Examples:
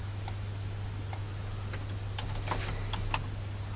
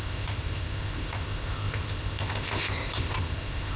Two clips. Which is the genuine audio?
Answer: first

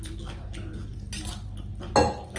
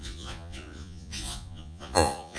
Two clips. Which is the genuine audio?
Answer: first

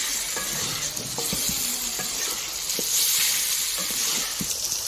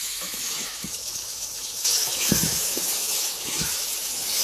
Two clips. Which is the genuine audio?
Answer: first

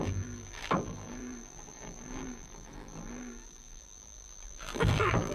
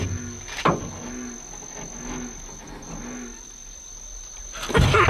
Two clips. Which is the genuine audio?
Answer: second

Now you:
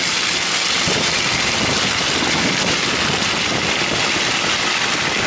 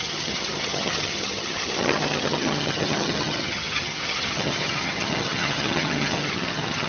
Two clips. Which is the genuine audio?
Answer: first